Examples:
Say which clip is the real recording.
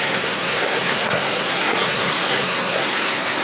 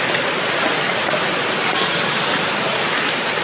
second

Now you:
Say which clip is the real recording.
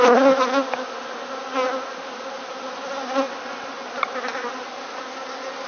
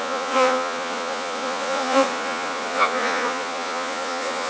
first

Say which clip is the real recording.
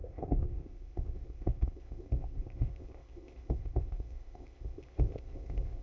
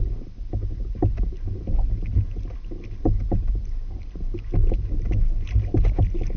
second